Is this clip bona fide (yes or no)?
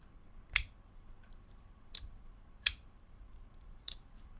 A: no